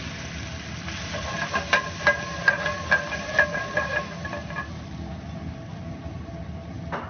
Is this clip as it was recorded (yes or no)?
yes